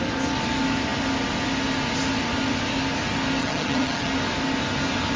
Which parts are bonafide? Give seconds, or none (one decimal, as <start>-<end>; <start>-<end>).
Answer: 0.0-3.4; 4.1-5.2